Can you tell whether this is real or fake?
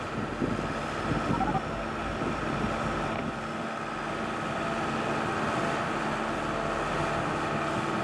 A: real